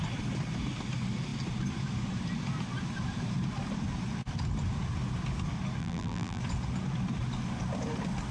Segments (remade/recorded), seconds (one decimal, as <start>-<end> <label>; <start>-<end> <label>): 0.0-5.8 recorded; 5.8-6.4 remade; 6.4-8.3 recorded